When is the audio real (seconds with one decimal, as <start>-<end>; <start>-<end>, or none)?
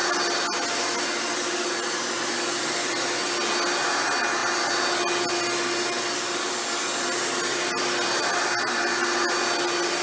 0.0-10.0